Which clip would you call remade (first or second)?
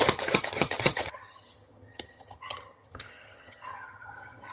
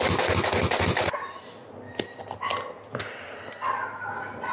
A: first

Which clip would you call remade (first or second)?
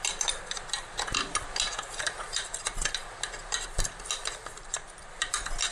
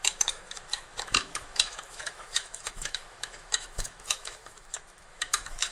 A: second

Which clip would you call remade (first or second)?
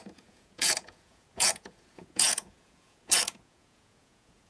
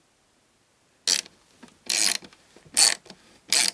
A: first